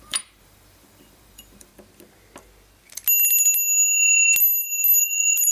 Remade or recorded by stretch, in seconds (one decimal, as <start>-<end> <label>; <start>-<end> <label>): 0.0-1.7 remade; 1.7-5.0 recorded; 5.0-5.5 remade